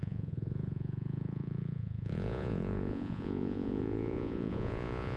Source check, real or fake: fake